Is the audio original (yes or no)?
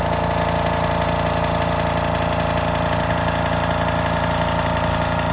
yes